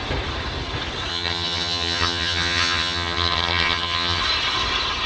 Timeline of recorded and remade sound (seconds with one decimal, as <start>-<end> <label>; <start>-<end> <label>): 0.0-1.1 recorded; 1.1-4.2 remade; 4.2-5.1 recorded